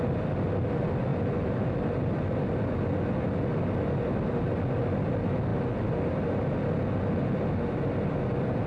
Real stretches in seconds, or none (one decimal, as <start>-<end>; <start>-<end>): 0.0-8.7